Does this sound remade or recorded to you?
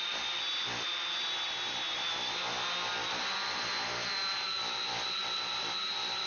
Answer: remade